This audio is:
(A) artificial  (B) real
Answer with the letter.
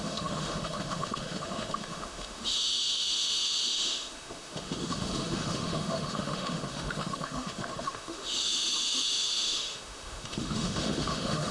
A